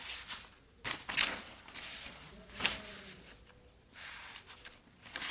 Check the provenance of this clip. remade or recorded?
recorded